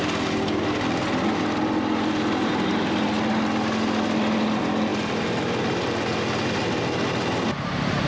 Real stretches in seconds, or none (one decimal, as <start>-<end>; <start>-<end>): 0.0-2.5; 3.1-4.9; 5.9-8.1